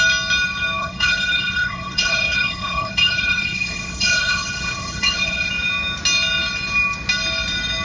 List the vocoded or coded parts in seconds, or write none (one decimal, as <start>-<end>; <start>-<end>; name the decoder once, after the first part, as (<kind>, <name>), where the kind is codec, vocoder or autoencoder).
0.8-5.5 (codec, HILCodec)

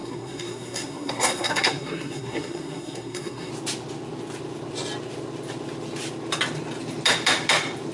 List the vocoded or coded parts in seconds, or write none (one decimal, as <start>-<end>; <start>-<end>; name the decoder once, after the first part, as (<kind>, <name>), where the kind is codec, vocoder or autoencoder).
0.0-3.5 (codec, SNAC)

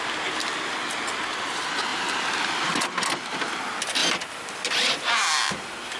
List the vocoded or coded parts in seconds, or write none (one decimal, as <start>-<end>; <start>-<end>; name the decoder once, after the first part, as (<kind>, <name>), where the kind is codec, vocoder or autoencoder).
none

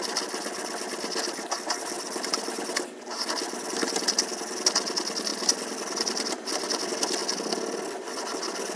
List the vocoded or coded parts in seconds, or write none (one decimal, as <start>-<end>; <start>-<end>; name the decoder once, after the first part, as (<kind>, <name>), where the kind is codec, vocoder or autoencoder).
none